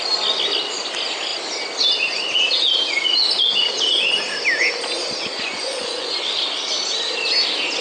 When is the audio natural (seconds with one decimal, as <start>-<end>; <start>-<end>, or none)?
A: 0.0-5.3; 6.2-7.8